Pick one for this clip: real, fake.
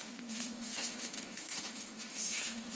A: fake